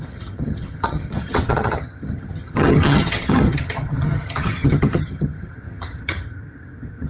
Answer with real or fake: fake